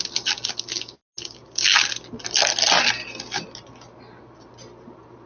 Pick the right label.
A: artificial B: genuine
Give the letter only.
B